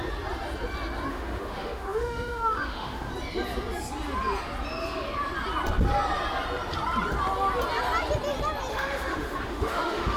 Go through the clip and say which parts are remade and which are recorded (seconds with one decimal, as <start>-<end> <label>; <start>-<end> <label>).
0.0-1.1 recorded; 1.1-3.1 remade; 3.1-8.7 recorded; 8.7-10.2 remade